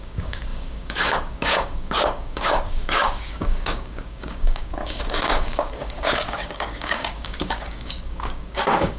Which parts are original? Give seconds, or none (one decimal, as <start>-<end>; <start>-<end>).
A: none